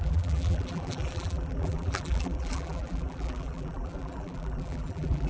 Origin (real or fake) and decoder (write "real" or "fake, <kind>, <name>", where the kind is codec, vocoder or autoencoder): fake, vocoder, BigVGAN v2